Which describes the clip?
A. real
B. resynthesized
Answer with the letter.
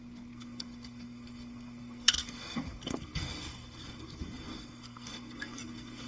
B